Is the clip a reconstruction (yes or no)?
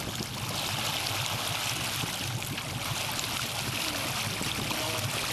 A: no